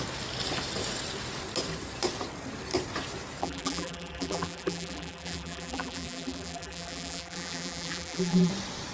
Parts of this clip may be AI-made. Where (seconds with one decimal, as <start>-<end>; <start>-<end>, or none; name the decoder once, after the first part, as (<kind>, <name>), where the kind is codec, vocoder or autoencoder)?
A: 3.4-8.5 (vocoder, BigVGAN v2)

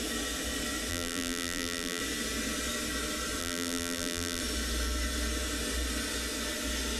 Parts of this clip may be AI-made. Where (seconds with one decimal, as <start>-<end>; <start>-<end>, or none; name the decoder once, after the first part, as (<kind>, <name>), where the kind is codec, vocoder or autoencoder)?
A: 0.9-2.0 (vocoder, BigVGAN v2); 3.4-4.4